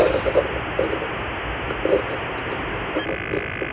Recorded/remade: recorded